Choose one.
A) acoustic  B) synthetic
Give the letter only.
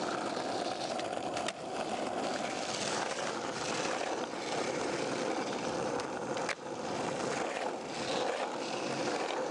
B